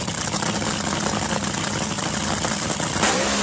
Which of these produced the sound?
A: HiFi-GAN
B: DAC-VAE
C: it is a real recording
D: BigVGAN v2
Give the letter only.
C